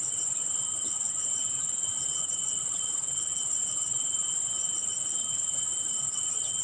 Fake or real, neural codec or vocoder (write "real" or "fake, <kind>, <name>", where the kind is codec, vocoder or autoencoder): fake, vocoder, BigVGAN v2